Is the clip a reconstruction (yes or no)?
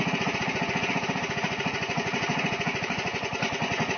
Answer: yes